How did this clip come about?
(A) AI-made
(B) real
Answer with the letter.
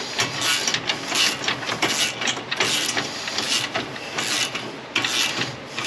B